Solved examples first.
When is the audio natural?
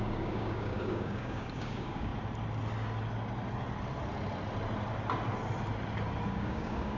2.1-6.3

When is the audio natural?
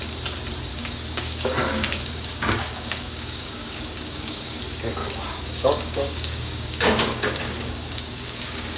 0.0-0.7; 4.6-5.0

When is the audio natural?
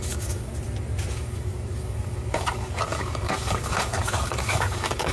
0.5-1.1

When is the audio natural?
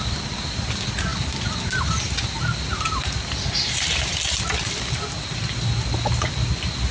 0.0-6.9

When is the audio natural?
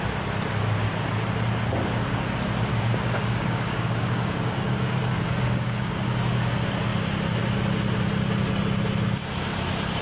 0.0-2.7; 5.9-10.0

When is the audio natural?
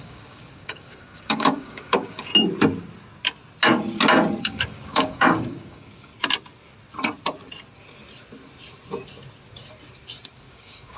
2.3-4.4; 6.1-10.4